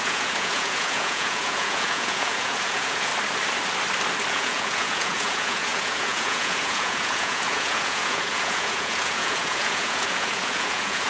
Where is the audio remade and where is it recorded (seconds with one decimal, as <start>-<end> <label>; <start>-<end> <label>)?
0.0-3.1 remade; 3.1-4.3 recorded; 4.3-11.1 remade